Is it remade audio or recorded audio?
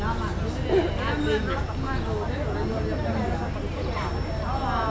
recorded